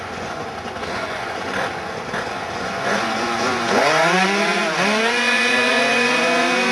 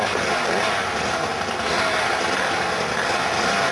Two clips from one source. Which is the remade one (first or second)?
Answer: first